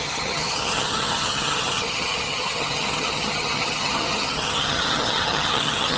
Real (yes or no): no